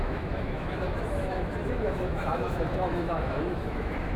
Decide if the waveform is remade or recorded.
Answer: remade